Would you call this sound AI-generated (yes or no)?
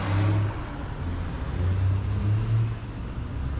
no